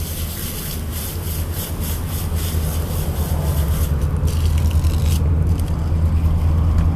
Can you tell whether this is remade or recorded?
recorded